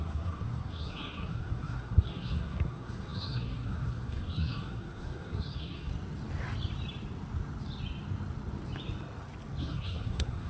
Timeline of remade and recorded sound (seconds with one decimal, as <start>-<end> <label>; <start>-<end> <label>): 0.0-5.9 remade; 5.9-9.6 recorded; 9.6-10.5 remade